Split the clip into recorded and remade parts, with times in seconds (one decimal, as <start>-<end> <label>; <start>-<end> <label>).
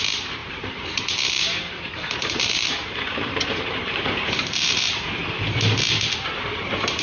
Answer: 0.0-5.2 remade; 5.2-6.2 recorded; 6.2-7.0 remade